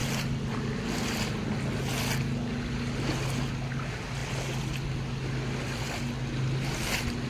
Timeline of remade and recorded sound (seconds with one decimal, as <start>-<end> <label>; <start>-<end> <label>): 0.0-7.3 recorded